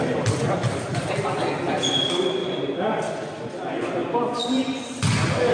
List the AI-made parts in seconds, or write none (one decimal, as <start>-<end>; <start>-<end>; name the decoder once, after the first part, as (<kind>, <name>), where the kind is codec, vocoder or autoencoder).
0.6-1.1 (vocoder, BigVGAN v2); 4.0-4.8